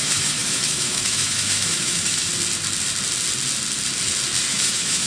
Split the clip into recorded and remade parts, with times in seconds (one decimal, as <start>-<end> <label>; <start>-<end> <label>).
0.0-2.3 remade; 2.3-4.5 recorded; 4.5-5.1 remade